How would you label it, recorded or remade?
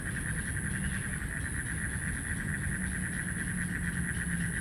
recorded